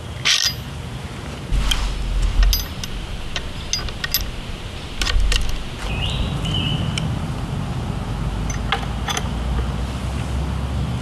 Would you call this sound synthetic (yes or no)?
no